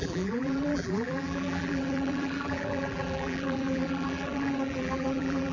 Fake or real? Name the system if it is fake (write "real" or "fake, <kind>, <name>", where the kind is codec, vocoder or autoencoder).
fake, vocoder, BigVGAN v2